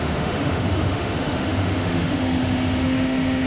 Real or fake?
fake